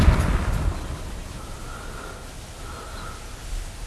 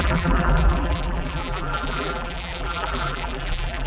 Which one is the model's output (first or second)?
second